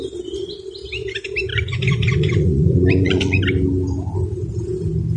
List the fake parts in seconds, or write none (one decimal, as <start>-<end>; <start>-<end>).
1.5-3.4

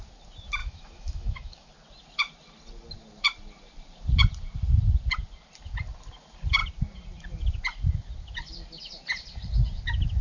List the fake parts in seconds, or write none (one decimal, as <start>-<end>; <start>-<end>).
0.6-1.7

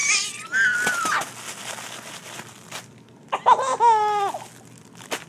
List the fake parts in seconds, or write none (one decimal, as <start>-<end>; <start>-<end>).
0.0-1.1